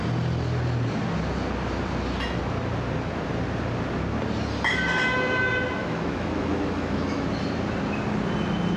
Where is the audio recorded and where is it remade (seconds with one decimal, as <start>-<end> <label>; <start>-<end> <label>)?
0.0-5.8 recorded; 5.8-7.3 remade; 7.3-8.8 recorded